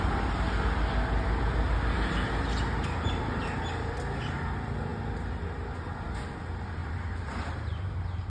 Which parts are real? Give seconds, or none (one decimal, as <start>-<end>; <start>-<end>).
0.0-6.8; 7.5-8.3